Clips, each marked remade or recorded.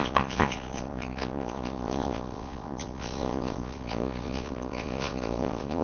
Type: remade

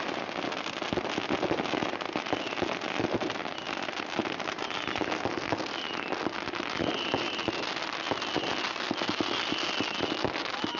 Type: recorded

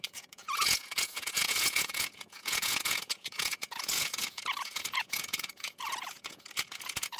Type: remade